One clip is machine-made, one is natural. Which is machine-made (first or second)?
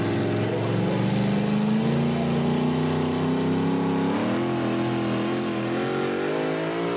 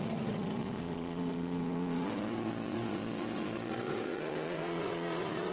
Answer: second